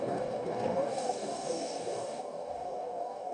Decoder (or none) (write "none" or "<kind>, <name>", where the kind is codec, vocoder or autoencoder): codec, DAC